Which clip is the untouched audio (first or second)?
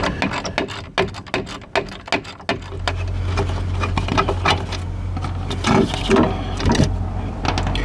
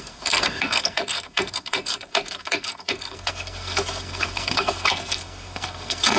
first